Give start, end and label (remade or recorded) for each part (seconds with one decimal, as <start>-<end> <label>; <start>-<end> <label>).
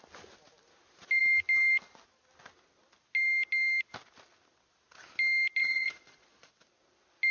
0.0-5.6 recorded; 5.6-6.5 remade; 6.5-7.3 recorded